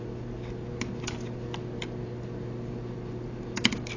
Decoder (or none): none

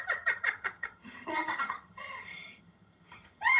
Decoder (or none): vocoder, HiFi-GAN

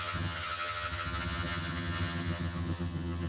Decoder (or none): vocoder, HiFi-GAN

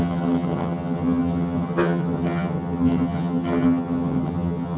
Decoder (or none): vocoder, HiFi-GAN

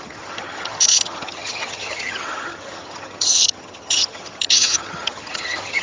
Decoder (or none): vocoder, HiFi-GAN